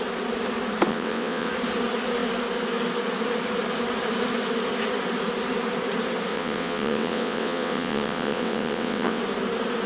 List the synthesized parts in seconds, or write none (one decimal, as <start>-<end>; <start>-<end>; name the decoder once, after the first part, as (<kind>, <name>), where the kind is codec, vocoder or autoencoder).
0.9-1.5 (vocoder, WaveNeXt); 6.3-9.2